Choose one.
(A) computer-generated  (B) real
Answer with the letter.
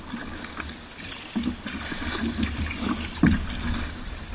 B